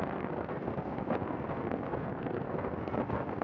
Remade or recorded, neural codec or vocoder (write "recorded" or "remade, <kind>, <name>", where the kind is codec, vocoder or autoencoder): remade, codec, SNAC